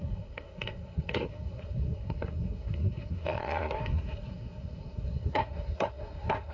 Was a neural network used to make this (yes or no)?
yes